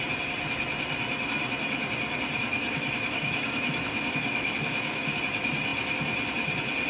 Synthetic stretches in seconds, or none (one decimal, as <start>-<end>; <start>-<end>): 2.5-5.2